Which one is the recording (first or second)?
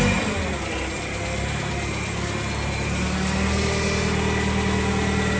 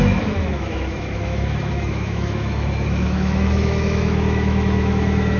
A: first